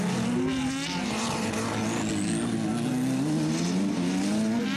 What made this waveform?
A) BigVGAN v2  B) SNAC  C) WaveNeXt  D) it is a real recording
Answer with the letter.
D